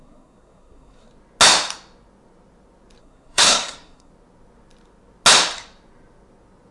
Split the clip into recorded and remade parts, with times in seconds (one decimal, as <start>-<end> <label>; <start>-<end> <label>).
0.0-1.1 remade; 1.1-3.0 recorded; 3.0-4.1 remade; 4.1-6.7 recorded